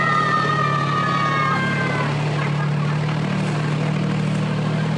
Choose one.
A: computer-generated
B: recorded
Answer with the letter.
B